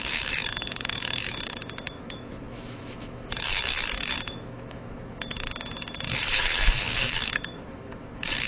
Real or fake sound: fake